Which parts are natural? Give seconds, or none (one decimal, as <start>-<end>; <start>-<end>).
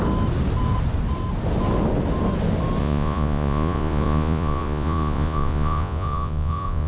0.0-2.8